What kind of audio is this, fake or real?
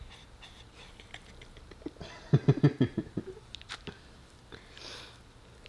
fake